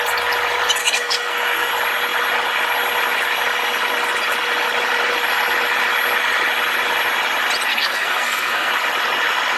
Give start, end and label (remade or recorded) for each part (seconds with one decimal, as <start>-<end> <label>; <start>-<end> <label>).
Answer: 0.0-0.8 recorded; 0.8-1.7 remade; 1.7-7.7 recorded; 7.7-8.7 remade; 8.7-9.6 recorded